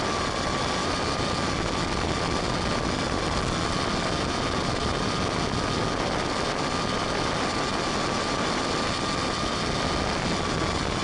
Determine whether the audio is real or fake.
real